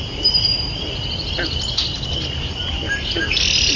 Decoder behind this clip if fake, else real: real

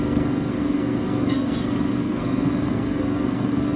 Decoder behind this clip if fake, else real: fake, codec, SNAC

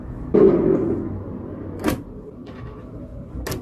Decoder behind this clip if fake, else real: real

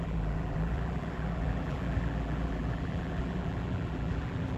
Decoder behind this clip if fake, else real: fake, vocoder, BigVGAN v2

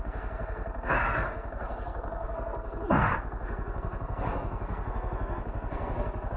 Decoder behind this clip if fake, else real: fake, codec, SNAC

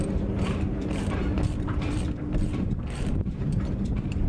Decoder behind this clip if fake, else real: fake, vocoder, BigVGAN v2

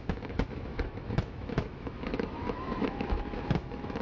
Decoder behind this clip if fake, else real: fake, autoencoder, DAC-VAE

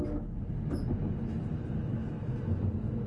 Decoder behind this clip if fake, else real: real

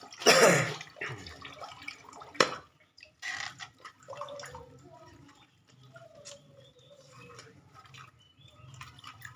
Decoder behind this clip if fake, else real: fake, vocoder, BigVGAN v2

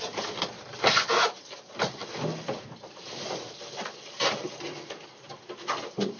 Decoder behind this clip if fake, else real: real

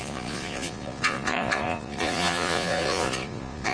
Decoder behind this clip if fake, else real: fake, vocoder, Vocos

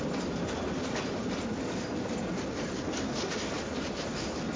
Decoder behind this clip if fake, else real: real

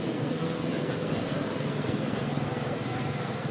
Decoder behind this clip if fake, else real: fake, codec, SNAC